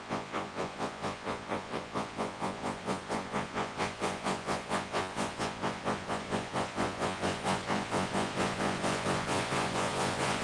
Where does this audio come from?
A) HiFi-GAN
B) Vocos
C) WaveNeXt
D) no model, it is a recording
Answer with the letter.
B